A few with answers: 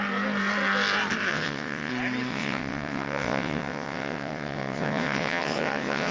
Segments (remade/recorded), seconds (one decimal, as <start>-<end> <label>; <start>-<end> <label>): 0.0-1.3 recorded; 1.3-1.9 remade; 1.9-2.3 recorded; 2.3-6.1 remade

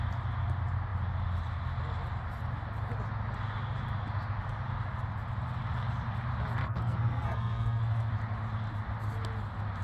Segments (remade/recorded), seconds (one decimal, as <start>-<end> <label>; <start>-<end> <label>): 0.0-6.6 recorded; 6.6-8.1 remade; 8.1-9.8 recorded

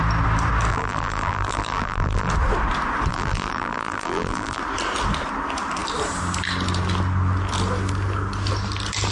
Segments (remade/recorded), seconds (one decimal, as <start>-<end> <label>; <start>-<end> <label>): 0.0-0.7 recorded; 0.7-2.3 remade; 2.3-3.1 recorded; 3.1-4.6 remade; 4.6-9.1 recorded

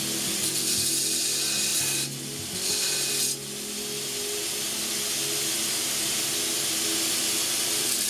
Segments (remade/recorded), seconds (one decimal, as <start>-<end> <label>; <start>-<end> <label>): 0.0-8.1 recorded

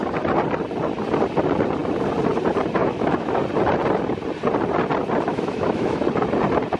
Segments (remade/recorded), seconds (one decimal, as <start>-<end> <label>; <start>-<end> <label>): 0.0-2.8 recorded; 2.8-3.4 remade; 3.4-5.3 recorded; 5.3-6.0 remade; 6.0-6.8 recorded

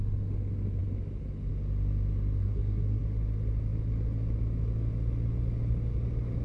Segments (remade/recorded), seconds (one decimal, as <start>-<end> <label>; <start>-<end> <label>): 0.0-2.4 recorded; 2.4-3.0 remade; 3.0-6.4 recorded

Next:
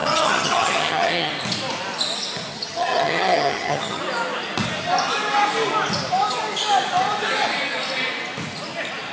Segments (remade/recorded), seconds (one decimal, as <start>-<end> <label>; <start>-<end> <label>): 0.0-1.3 remade; 1.3-2.5 recorded; 2.5-4.0 remade; 4.0-9.1 recorded